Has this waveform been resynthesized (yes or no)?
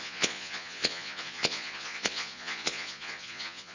yes